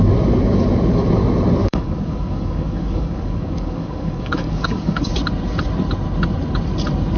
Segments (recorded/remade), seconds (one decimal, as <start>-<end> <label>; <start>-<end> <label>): 0.0-1.6 recorded; 1.6-5.1 remade; 5.1-7.2 recorded